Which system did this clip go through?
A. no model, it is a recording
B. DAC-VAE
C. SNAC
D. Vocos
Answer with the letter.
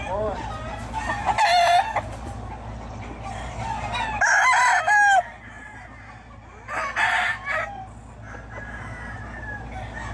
A